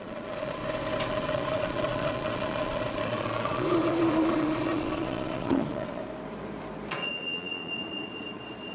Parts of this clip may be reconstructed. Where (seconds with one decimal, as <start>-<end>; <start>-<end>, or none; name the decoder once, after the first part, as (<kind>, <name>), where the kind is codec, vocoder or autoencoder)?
0.0-0.6 (vocoder, Vocos); 1.1-6.0; 6.9-8.7